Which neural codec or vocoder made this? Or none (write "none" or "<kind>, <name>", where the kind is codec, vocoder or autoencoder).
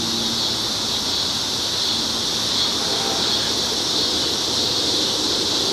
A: vocoder, BigVGAN v2